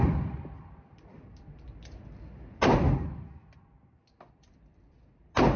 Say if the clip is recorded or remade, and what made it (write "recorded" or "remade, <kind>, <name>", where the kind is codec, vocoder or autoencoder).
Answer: recorded